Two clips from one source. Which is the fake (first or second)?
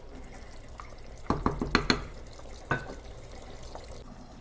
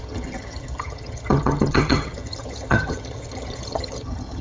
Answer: second